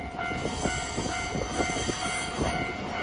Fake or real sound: real